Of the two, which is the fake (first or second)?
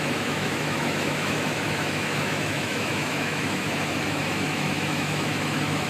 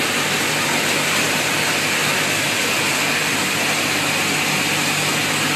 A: first